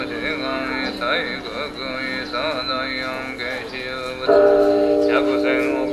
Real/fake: real